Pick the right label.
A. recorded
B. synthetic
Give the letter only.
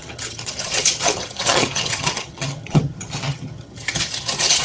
B